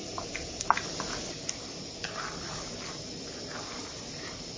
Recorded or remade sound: recorded